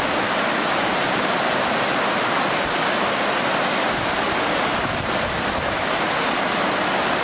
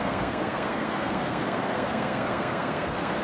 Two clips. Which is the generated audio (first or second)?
second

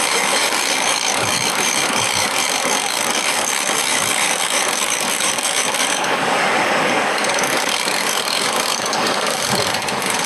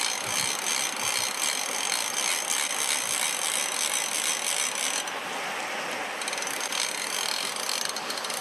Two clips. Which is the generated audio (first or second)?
first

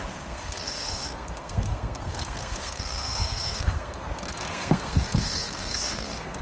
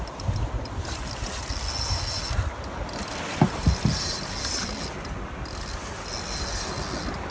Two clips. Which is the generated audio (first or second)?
first